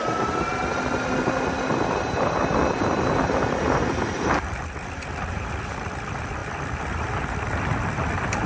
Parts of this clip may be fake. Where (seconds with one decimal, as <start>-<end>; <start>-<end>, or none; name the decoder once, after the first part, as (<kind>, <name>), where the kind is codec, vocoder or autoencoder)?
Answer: none